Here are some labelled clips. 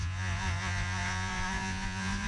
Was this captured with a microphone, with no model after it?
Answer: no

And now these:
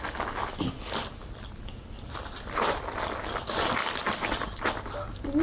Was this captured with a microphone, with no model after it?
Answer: yes